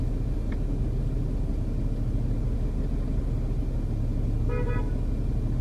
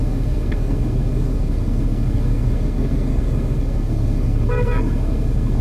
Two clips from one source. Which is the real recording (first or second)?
first